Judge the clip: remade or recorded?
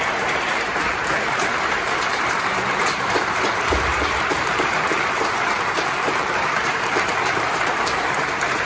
remade